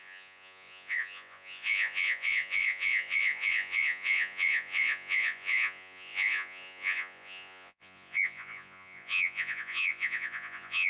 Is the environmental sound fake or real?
fake